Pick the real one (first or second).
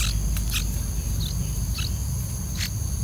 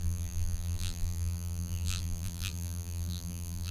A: first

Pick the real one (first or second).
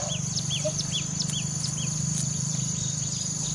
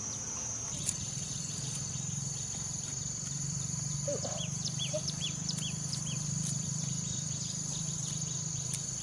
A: first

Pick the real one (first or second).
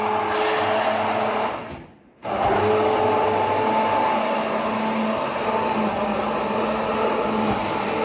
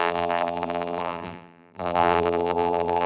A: first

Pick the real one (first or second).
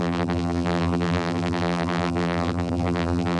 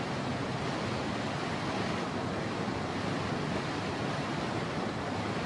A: second